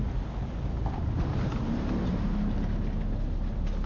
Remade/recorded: recorded